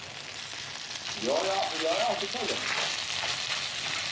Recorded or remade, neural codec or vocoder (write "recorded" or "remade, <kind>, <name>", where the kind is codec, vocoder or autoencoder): recorded